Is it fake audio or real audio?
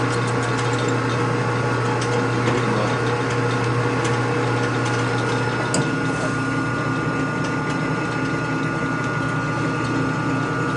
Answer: real